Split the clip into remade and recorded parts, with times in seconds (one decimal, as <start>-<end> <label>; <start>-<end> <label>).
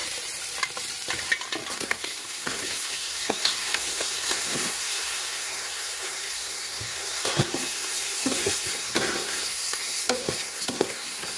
0.0-1.7 recorded; 1.7-11.4 remade